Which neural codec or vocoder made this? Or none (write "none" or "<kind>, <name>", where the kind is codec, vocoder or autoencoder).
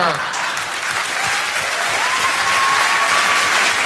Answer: none